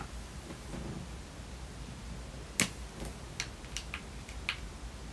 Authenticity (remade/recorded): recorded